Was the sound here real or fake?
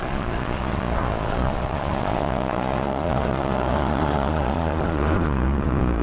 fake